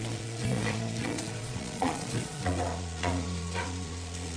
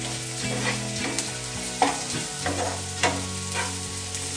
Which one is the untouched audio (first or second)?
second